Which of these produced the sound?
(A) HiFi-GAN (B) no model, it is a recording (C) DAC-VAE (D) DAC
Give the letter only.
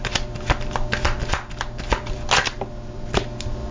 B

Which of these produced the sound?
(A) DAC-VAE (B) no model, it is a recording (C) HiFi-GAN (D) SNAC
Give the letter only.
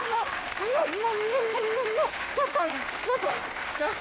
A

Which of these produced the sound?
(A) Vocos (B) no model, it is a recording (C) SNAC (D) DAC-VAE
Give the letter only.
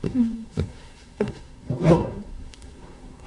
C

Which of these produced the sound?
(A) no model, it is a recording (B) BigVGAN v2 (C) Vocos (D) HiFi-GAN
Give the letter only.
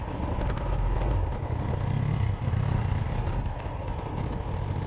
A